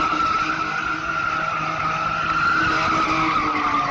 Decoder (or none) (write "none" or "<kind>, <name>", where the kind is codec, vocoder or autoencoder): none